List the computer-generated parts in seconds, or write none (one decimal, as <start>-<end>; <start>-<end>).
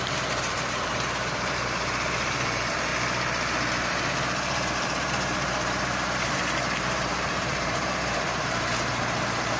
0.0-2.9; 3.8-9.6